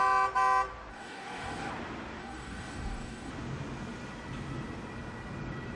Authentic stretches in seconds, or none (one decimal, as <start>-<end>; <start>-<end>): 0.0-0.9; 1.7-2.2; 3.3-5.8